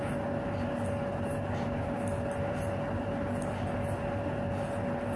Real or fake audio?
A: real